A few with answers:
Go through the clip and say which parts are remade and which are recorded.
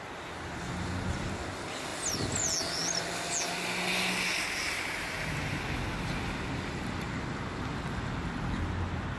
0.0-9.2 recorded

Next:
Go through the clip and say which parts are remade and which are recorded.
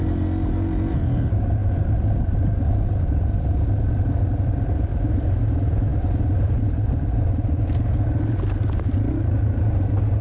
0.0-4.9 recorded; 4.9-5.4 remade; 5.4-10.2 recorded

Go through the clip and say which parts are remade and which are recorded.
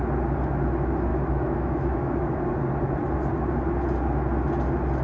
0.0-1.1 recorded; 1.1-2.4 remade; 2.4-5.0 recorded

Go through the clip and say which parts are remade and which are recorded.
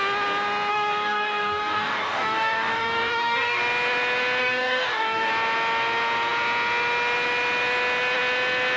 0.0-0.7 recorded; 0.7-3.6 remade; 3.6-4.4 recorded; 4.4-5.3 remade; 5.3-8.8 recorded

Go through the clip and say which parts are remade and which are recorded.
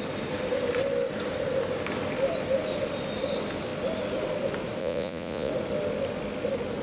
0.0-4.8 recorded; 4.8-5.5 remade; 5.5-6.8 recorded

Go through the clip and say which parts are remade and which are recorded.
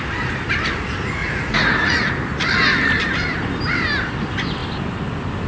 0.0-1.2 recorded; 1.2-2.1 remade; 2.1-5.5 recorded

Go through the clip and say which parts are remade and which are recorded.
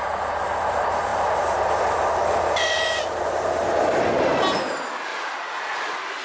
0.0-6.2 recorded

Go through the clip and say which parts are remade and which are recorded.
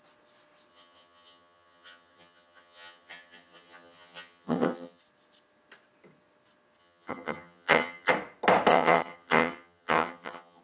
0.0-0.7 recorded; 0.7-5.0 remade; 5.0-6.8 recorded; 6.8-8.1 remade; 8.1-8.7 recorded; 8.7-10.6 remade